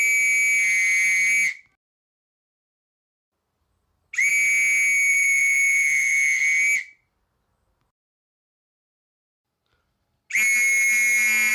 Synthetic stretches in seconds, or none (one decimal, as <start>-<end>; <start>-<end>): 5.1-6.4